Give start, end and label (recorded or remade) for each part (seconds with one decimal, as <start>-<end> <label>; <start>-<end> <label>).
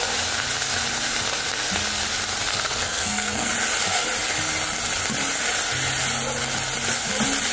0.0-2.5 recorded; 2.5-3.5 remade; 3.5-7.5 recorded